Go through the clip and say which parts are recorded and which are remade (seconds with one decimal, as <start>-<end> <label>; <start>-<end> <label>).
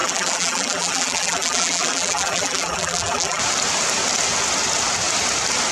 0.0-3.4 remade; 3.4-5.7 recorded